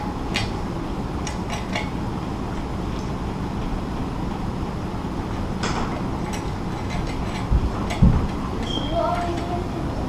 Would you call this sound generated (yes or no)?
no